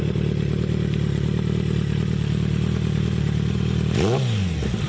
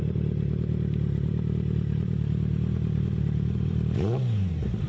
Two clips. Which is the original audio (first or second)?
first